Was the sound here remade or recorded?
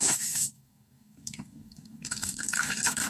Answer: remade